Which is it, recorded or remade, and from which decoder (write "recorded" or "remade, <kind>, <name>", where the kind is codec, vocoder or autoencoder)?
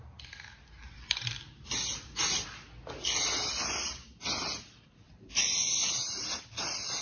recorded